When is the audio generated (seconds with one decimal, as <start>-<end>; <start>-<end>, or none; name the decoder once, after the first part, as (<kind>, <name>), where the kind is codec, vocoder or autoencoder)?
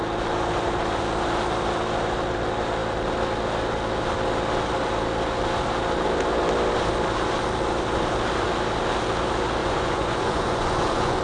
9.6-11.2 (vocoder, Vocos)